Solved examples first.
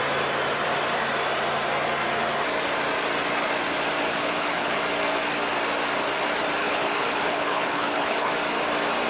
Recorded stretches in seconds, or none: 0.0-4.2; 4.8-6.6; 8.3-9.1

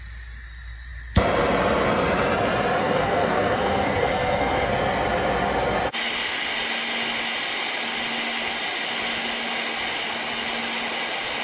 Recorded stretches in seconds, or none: 0.0-2.8; 4.7-11.4

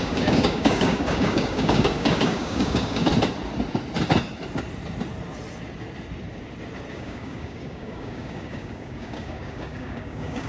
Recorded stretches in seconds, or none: 3.1-6.9

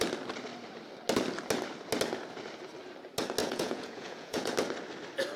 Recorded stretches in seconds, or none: 0.0-3.4; 4.5-5.4